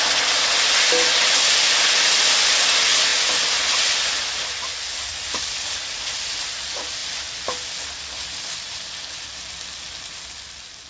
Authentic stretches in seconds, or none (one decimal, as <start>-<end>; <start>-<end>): 0.0-10.9